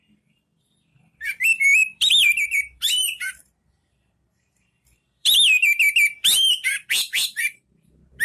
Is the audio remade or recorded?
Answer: remade